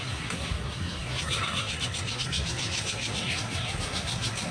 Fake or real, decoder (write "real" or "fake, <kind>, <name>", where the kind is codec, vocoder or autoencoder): fake, codec, SNAC